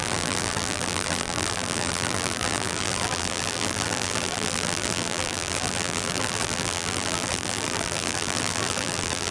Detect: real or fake fake